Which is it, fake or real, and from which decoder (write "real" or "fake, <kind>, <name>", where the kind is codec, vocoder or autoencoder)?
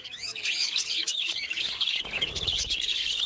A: fake, codec, DAC